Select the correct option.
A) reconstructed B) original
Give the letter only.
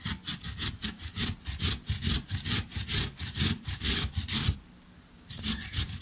B